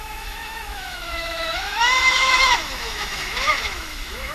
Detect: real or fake fake